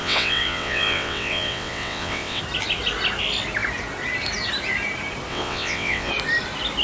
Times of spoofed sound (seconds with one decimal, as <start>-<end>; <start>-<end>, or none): 0.0-2.4; 5.3-6.1